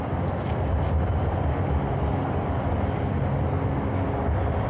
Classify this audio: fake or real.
real